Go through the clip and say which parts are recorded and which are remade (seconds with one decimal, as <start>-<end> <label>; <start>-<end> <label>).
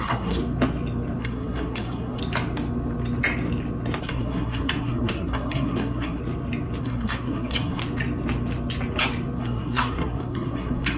0.0-0.4 remade; 0.4-1.2 recorded; 1.2-2.2 remade; 2.2-4.0 recorded; 4.0-6.2 remade; 6.2-6.8 recorded; 6.8-7.8 remade; 7.8-9.4 recorded; 9.4-11.0 remade